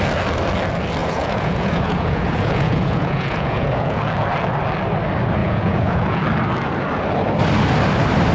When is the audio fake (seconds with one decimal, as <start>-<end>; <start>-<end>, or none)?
1.0-4.0; 5.4-6.2

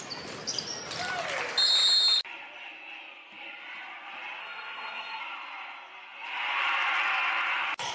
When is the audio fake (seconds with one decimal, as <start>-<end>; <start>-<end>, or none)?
4.4-5.2

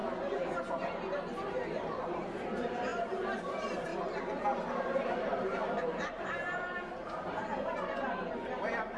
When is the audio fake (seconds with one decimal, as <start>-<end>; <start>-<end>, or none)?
1.5-3.9; 4.7-9.0

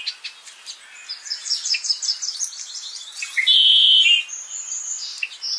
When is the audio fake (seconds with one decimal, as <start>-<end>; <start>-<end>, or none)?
1.4-4.8

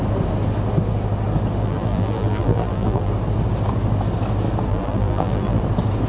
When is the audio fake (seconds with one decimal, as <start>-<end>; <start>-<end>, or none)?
1.6-3.1; 4.7-5.6

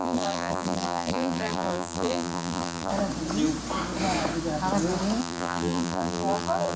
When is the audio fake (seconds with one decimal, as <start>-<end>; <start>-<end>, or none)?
0.0-2.9; 5.2-6.8